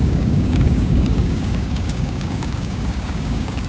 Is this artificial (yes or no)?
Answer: yes